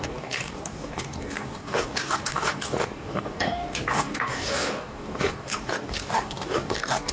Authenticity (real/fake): fake